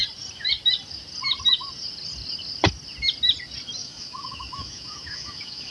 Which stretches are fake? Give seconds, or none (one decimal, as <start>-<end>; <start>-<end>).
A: 3.8-5.7